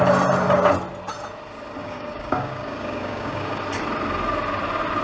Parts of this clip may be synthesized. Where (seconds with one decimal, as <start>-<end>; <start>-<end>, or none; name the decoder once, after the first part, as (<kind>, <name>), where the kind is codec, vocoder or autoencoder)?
1.8-3.6 (codec, DAC)